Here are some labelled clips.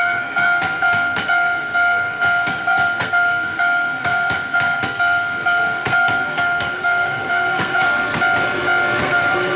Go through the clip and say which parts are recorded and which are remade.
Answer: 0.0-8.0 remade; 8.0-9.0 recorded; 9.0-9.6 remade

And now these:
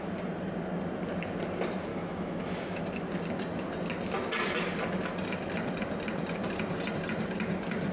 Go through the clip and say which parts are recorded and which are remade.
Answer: 0.0-1.9 recorded; 1.9-2.8 remade; 2.8-7.9 recorded

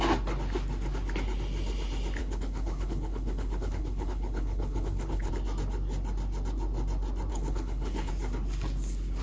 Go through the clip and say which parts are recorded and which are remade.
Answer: 0.0-2.2 recorded; 2.2-5.3 remade; 5.3-7.3 recorded; 7.3-8.1 remade; 8.1-9.2 recorded

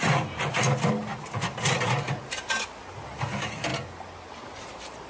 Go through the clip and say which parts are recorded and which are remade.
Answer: 0.0-5.1 recorded

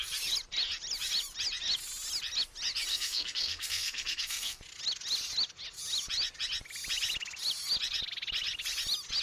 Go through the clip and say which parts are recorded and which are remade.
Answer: 0.0-2.9 recorded; 2.9-4.6 remade; 4.6-9.2 recorded

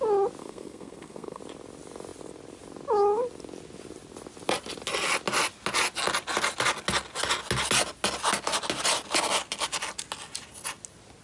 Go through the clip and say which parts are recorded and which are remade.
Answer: 0.0-0.4 recorded; 0.4-1.4 remade; 1.4-11.2 recorded